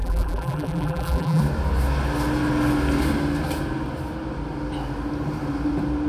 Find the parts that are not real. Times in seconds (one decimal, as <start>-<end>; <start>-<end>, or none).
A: 0.0-1.4